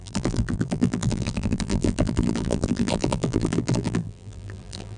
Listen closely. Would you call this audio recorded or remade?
remade